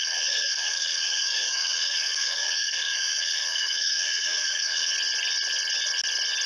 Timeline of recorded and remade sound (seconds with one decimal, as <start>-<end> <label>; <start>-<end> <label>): 0.0-4.9 remade; 4.9-6.5 recorded